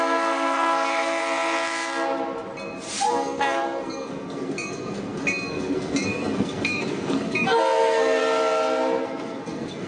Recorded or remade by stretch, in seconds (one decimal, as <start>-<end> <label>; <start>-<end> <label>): 0.0-1.2 remade; 1.2-3.1 recorded; 3.1-8.2 remade; 8.2-9.0 recorded; 9.0-9.9 remade